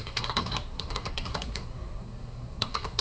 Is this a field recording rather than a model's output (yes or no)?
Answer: no